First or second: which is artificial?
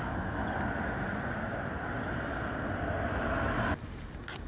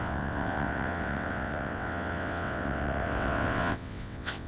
second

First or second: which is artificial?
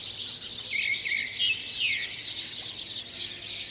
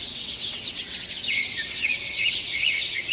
second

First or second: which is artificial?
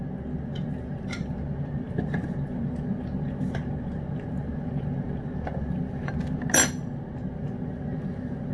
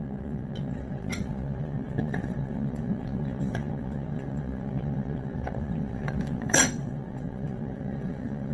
second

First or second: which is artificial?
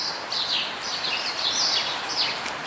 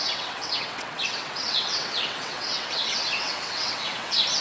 second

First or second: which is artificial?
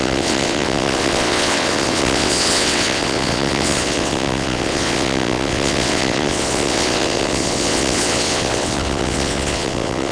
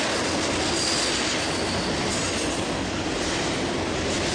first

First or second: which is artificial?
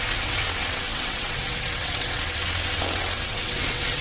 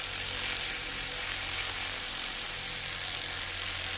first